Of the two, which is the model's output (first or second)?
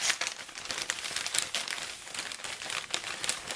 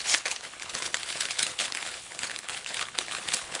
second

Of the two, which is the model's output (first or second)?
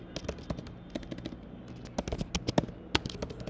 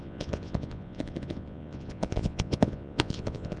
second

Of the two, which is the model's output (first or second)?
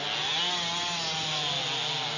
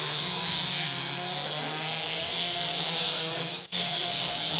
second